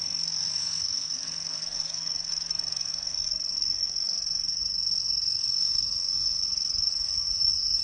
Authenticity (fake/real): fake